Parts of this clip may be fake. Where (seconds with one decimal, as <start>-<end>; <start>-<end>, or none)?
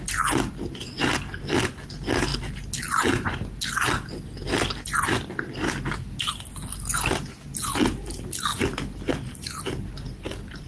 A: none